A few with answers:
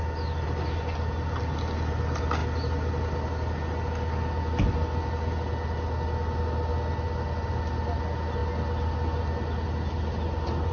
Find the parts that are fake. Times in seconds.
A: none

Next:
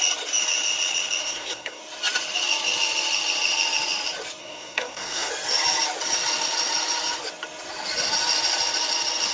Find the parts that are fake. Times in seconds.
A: 1.2-1.8 (codec, SNAC); 4.4-5.3

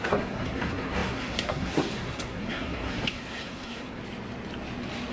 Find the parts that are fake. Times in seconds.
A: 0.0-4.0 (codec, SNAC)

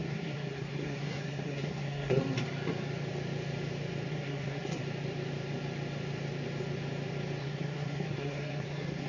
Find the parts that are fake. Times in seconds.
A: 0.0-2.2 (codec, SNAC); 4.1-4.8; 7.4-9.1